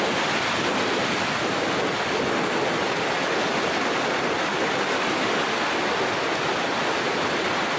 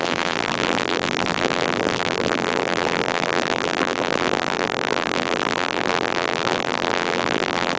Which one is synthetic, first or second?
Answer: second